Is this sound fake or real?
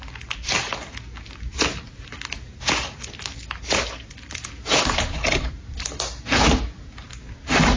real